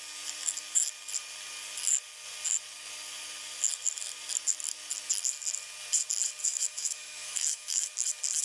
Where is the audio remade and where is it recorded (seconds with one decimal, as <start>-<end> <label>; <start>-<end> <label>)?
0.0-6.4 recorded; 6.4-7.9 remade; 7.9-8.4 recorded

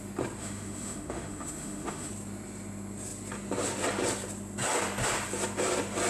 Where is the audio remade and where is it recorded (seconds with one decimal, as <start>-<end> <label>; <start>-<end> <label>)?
0.0-0.4 recorded; 0.4-2.1 remade; 2.1-6.1 recorded

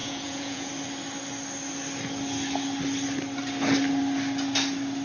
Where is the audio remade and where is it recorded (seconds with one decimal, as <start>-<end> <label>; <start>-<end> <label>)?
0.0-0.7 remade; 0.7-5.0 recorded

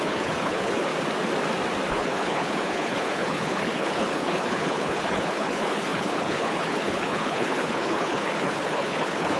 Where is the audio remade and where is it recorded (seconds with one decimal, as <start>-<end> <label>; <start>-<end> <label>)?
0.0-0.9 remade; 0.9-1.9 recorded; 1.9-9.4 remade

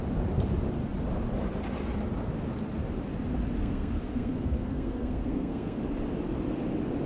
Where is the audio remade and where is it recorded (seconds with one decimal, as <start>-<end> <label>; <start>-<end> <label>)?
0.0-3.6 recorded; 3.6-5.8 remade; 5.8-7.1 recorded

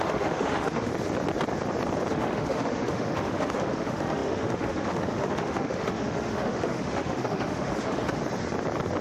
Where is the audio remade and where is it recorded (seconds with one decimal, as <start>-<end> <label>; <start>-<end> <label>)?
0.0-0.9 remade; 0.9-2.1 recorded; 2.1-8.2 remade; 8.2-9.0 recorded

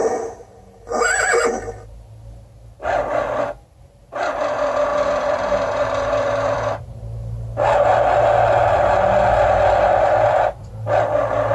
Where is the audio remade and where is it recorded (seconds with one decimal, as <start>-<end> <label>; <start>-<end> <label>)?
0.0-4.9 recorded; 4.9-6.8 remade; 6.8-7.9 recorded; 7.9-10.7 remade; 10.7-11.5 recorded

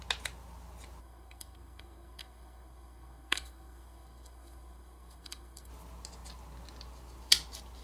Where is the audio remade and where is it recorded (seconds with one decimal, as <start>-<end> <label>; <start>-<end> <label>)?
0.0-1.0 recorded; 1.0-5.7 remade; 5.7-7.8 recorded